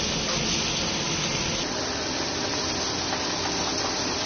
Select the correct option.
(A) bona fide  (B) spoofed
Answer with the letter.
A